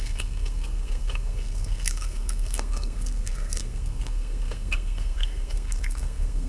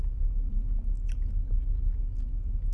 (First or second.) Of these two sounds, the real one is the second